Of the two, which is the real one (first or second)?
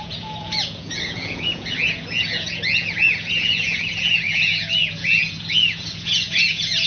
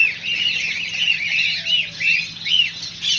second